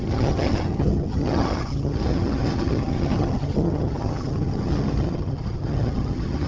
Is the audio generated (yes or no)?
yes